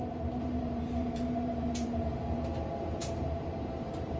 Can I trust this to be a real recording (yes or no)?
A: no